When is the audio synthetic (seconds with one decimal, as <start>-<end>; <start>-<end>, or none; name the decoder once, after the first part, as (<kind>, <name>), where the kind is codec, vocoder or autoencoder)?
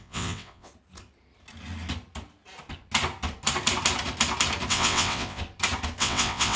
0.0-0.7 (vocoder, WaveNeXt); 4.7-5.4; 6.0-6.6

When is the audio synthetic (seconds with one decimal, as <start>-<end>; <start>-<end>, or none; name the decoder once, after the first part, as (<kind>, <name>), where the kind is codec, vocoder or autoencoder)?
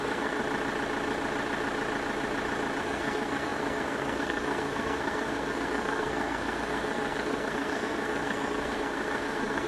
0.0-0.4 (codec, SNAC); 2.8-9.7